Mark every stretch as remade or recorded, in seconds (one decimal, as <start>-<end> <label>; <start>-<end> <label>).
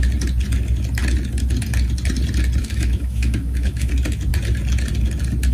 0.0-2.6 recorded; 2.6-3.9 remade; 3.9-5.5 recorded